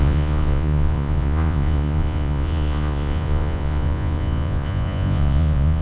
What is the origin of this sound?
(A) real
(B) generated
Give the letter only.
B